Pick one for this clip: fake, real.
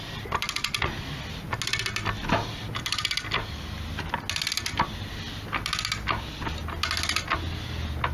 real